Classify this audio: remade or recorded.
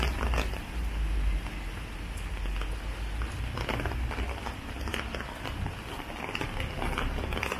recorded